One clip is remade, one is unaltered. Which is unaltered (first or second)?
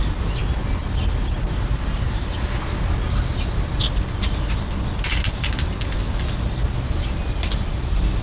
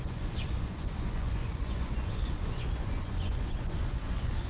first